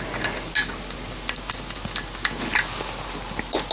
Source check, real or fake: real